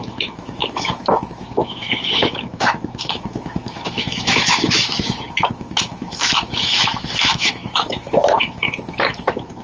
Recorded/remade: remade